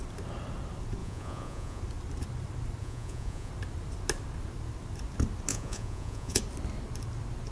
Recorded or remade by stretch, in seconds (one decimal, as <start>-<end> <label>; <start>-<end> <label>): 0.0-1.0 recorded; 1.0-1.8 remade; 1.8-2.8 recorded; 2.8-3.5 remade; 3.5-5.5 recorded; 5.5-6.4 remade; 6.4-7.5 recorded